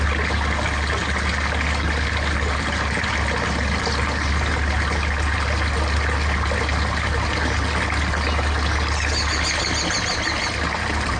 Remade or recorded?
recorded